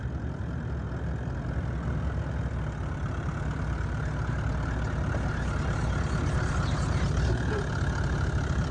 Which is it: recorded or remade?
recorded